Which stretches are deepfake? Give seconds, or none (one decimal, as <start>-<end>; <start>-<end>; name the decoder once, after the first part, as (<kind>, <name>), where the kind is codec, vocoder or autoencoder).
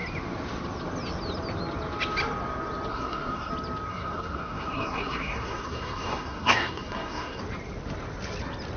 2.9-3.5 (codec, SNAC); 3.9-7.4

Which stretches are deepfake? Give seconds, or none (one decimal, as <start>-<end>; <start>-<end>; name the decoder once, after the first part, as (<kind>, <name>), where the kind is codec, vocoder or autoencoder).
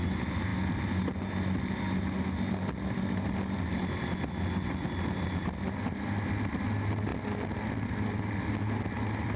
none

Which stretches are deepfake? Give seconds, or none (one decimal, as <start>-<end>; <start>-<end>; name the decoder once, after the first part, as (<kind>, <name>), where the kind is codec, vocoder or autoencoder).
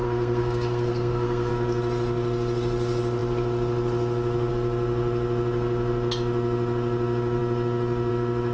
0.0-1.5 (codec, SNAC)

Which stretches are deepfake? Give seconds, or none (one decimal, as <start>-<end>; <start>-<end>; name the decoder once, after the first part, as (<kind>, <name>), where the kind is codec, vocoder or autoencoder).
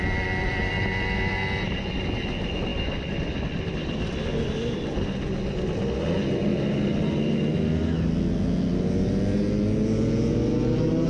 none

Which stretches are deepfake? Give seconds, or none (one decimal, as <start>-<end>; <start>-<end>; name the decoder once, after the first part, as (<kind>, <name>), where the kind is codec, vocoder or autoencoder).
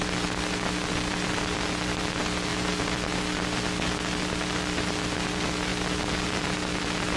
none